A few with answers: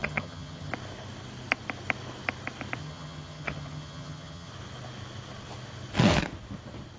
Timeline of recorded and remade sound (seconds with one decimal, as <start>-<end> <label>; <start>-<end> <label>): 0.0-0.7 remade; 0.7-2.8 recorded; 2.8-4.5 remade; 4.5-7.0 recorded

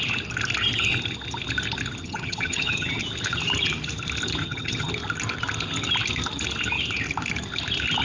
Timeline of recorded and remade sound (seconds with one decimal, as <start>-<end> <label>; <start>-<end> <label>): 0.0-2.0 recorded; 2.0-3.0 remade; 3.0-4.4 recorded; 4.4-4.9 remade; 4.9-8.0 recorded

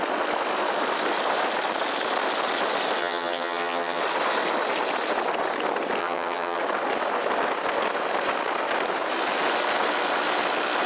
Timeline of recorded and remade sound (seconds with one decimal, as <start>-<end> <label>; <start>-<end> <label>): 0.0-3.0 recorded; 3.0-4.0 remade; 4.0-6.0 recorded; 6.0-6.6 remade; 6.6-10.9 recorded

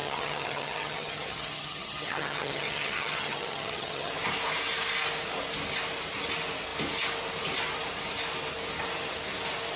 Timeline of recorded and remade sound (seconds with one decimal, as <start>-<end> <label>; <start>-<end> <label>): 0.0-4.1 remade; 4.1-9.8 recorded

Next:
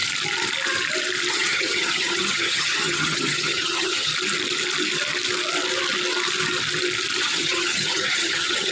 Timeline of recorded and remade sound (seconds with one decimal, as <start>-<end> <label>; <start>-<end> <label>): 0.0-1.3 recorded; 1.3-4.1 remade; 4.1-7.2 recorded; 7.2-8.7 remade